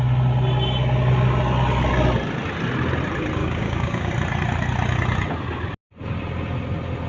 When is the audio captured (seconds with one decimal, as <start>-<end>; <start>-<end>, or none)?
0.0-3.4; 4.1-7.1